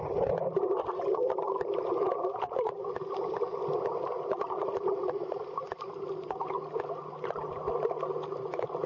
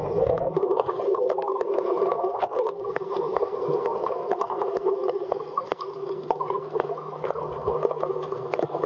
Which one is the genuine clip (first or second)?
first